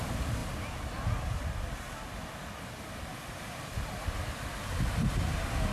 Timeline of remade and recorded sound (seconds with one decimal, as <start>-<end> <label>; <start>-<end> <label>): 0.0-5.7 recorded